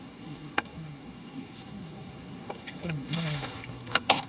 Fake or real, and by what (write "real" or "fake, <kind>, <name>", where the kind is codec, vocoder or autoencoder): fake, codec, SNAC